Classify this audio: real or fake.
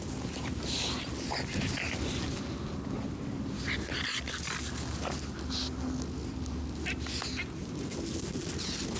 real